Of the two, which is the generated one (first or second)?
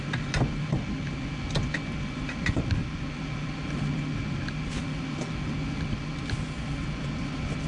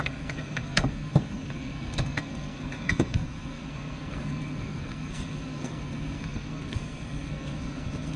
second